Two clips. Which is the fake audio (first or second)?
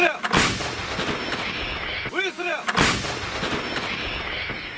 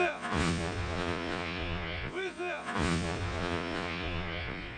second